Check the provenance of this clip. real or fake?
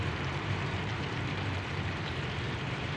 fake